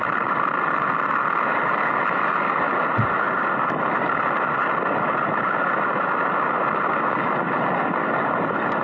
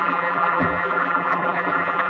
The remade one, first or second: second